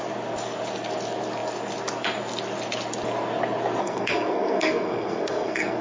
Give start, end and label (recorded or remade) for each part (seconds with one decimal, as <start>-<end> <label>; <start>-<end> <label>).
0.0-3.8 recorded; 3.8-5.8 remade